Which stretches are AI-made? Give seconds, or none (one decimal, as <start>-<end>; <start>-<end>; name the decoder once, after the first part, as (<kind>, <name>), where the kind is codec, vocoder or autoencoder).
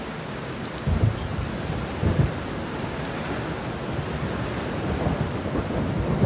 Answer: none